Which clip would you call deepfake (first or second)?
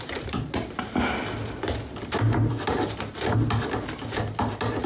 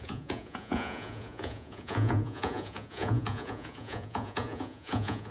second